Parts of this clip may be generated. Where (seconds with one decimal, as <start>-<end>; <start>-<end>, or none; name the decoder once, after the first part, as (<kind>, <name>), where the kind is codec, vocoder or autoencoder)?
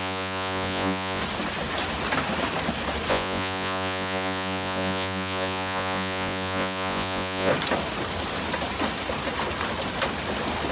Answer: 0.0-1.2 (vocoder, Vocos); 3.1-7.5